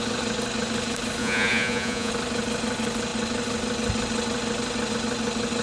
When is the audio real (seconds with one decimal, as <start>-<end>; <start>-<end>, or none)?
0.0-1.2; 2.1-5.6